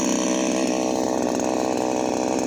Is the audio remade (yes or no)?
no